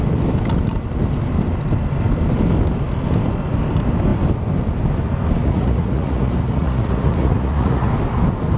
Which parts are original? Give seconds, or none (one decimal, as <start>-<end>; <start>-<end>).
0.0-5.4; 7.9-8.6